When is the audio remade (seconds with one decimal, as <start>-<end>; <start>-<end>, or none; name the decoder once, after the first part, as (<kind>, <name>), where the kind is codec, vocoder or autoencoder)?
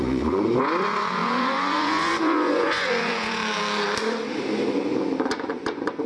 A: 0.0-3.4 (vocoder, Vocos); 5.3-6.1